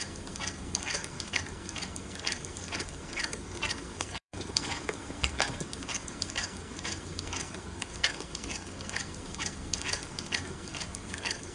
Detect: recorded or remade remade